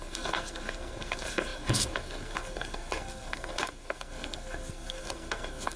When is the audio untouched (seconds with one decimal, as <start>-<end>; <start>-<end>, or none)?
none